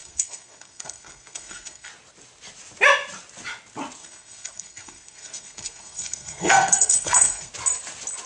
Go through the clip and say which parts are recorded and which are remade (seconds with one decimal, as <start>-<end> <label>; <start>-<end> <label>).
0.0-1.9 remade; 1.9-4.0 recorded; 4.0-7.5 remade; 7.5-8.3 recorded